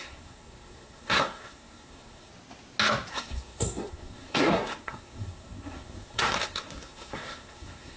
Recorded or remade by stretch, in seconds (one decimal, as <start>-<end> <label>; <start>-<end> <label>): 0.0-2.3 remade; 2.3-3.1 recorded; 3.1-8.0 remade